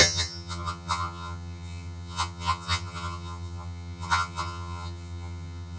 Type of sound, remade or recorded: remade